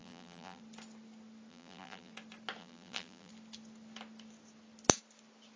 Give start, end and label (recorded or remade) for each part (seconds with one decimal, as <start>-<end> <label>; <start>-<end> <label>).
0.0-0.6 remade; 0.6-1.5 recorded; 1.5-2.1 remade; 2.1-2.6 recorded; 2.6-3.3 remade; 3.3-5.6 recorded